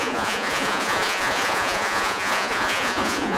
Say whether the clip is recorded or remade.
remade